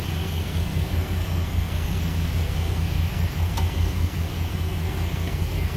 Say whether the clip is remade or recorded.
remade